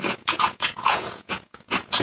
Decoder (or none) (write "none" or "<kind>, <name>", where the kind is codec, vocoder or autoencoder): vocoder, Vocos